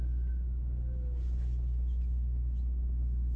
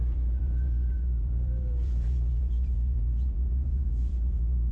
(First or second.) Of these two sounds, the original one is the first